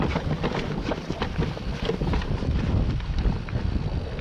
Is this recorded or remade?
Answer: remade